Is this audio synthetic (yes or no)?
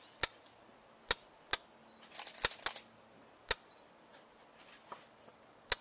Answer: no